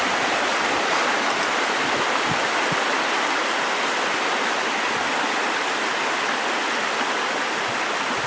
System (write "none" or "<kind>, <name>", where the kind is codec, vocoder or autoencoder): none